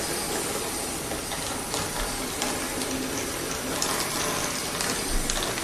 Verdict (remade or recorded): recorded